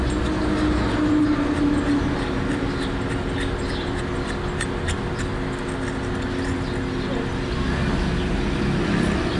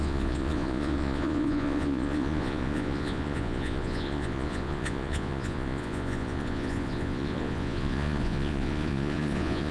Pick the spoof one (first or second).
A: second